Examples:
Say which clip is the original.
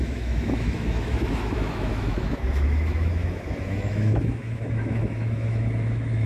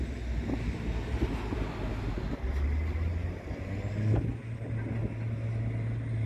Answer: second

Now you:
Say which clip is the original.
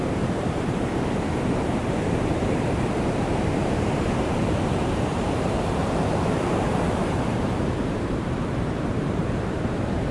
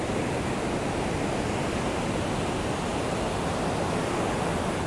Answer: second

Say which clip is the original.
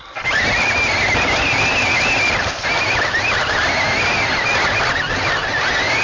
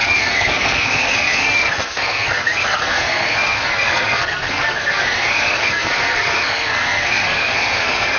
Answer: first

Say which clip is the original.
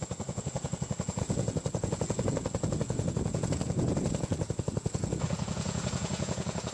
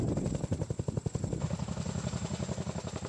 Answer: second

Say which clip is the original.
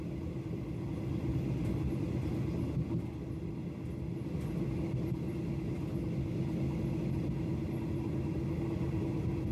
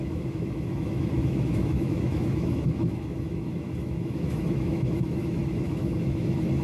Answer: first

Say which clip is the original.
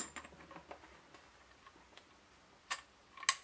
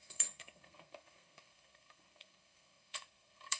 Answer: first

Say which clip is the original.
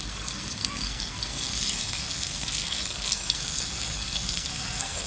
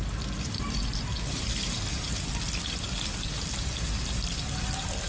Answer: second